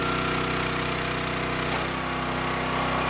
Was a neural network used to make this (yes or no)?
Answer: no